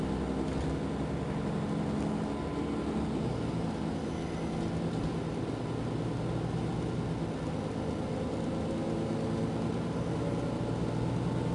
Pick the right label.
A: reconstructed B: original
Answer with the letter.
B